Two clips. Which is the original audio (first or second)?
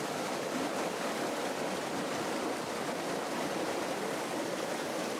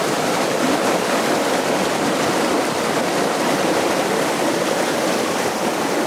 first